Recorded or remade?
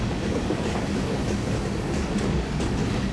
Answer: remade